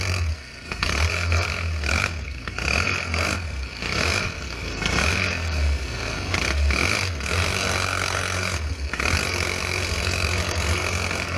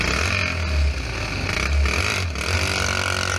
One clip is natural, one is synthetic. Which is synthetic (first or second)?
first